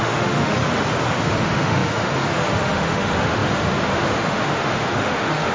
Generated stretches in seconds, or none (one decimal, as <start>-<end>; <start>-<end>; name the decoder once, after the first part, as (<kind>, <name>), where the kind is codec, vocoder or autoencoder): 0.0-0.6 (autoencoder, DAC-VAE); 1.2-5.5